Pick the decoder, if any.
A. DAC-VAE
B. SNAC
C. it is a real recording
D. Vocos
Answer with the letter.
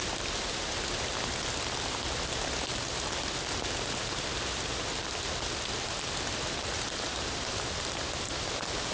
C